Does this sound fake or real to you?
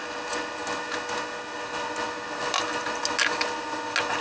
real